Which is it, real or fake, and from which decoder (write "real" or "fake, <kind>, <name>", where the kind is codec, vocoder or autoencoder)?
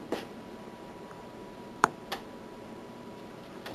fake, vocoder, BigVGAN v2